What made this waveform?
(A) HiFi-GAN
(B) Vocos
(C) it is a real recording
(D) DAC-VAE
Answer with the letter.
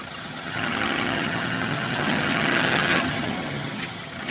A